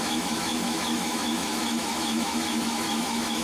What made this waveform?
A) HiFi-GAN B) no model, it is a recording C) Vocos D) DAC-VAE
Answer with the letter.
D